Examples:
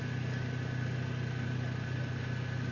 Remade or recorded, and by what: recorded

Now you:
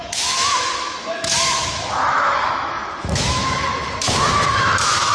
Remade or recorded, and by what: remade, autoencoder, DAC-VAE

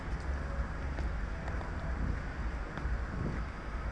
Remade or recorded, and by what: recorded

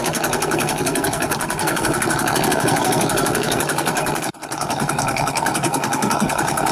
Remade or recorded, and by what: remade, codec, SNAC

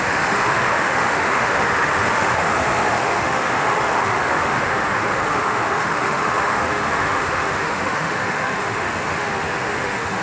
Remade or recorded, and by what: remade, autoencoder, DAC-VAE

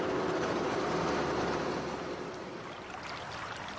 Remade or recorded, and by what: recorded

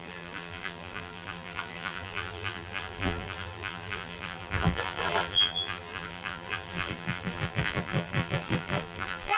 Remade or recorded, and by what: remade, vocoder, BigVGAN v2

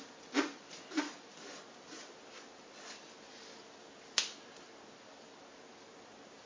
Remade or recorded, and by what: recorded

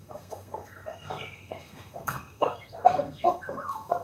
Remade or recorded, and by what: remade, codec, SNAC